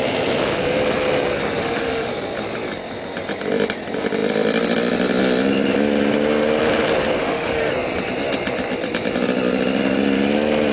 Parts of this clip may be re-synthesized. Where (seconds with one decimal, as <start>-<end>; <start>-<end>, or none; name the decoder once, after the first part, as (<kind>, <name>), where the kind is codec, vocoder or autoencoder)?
1.6-2.1 (autoencoder, DAC-VAE); 7.2-7.7